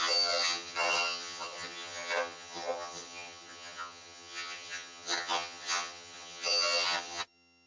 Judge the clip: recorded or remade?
remade